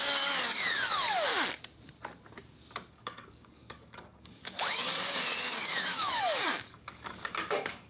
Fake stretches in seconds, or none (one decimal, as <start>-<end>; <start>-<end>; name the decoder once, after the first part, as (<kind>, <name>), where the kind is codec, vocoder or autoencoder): 0.0-1.3 (codec, DAC); 2.9-7.9